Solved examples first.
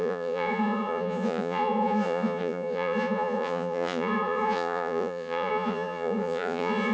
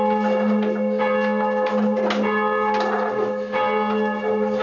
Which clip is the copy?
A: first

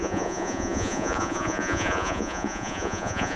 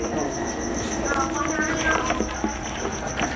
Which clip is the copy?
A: first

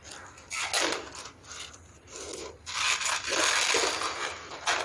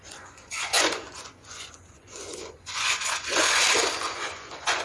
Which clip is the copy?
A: second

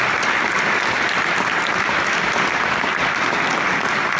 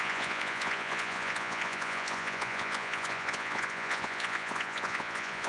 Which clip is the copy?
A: second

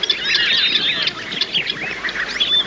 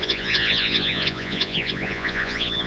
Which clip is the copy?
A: second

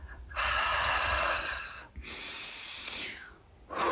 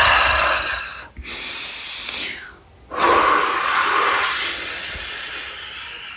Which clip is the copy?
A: first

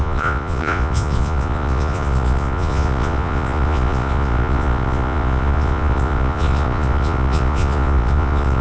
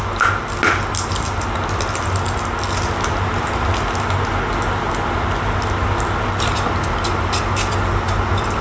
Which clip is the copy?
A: first